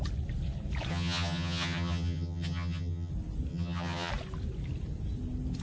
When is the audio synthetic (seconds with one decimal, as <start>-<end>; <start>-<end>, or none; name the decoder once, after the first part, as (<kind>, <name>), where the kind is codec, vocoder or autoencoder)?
0.9-3.1 (vocoder, HiFi-GAN); 3.5-4.1